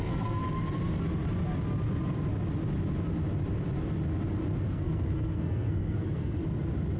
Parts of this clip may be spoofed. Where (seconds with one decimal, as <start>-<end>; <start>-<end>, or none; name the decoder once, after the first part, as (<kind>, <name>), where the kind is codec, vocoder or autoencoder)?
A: 0.0-0.4 (codec, SNAC); 4.6-6.4